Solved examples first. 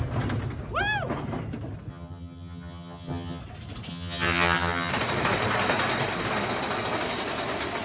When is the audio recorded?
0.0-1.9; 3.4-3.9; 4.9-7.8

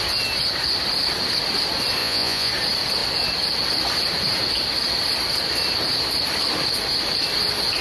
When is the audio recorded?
0.0-2.0; 2.5-7.8

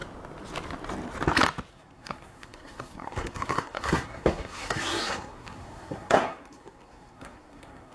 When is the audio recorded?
0.0-1.7

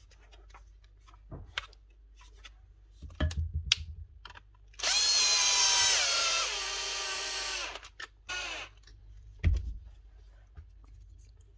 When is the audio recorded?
0.0-8.9; 9.5-11.6